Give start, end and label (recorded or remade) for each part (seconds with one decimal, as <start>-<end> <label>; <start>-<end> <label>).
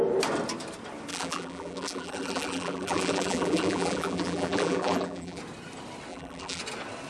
0.0-1.1 recorded; 1.1-5.4 remade; 5.4-6.1 recorded; 6.1-6.6 remade; 6.6-7.1 recorded